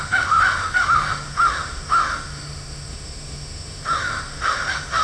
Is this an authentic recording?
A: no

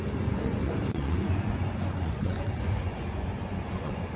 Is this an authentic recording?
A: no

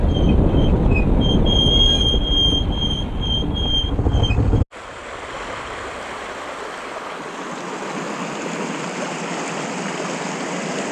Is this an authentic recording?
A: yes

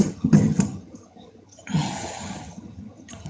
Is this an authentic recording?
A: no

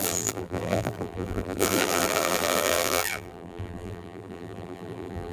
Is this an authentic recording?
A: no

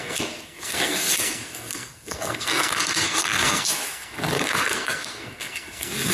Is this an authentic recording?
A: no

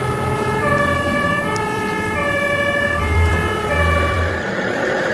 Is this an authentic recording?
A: no